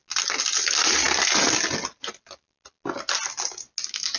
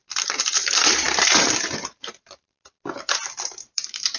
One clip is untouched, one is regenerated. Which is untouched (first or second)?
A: first